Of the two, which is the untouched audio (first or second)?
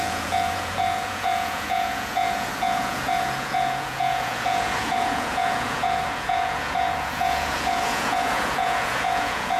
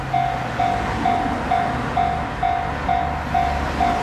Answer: second